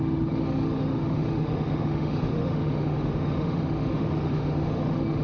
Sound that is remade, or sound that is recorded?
remade